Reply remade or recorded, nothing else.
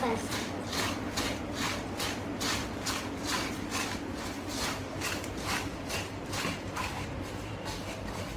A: remade